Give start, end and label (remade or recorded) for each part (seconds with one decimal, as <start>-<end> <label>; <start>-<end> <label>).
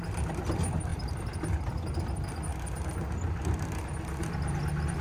0.0-5.0 recorded